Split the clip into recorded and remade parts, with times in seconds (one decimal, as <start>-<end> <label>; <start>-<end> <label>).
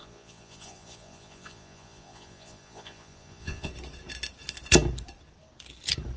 0.0-3.7 remade; 3.7-6.2 recorded